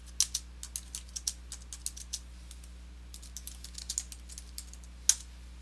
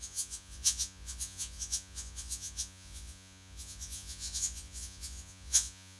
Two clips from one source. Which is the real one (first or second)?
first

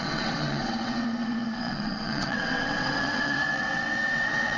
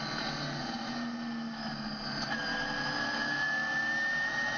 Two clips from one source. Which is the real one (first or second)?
second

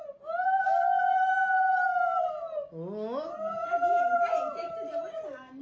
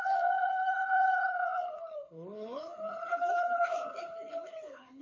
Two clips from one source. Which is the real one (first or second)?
first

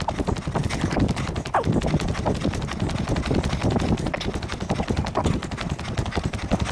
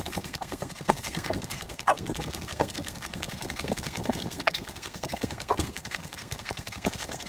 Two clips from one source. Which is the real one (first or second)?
first